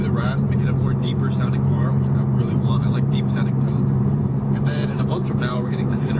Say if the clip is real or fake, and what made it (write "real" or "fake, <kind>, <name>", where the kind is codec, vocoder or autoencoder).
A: fake, vocoder, BigVGAN v2